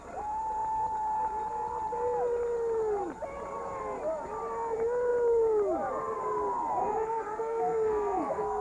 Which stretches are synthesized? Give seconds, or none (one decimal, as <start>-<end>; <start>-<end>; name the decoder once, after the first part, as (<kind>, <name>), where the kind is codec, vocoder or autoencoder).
6.8-8.6 (codec, SNAC)